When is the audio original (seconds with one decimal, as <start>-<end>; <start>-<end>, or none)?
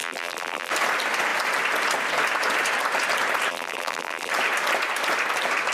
0.7-3.5; 4.3-5.7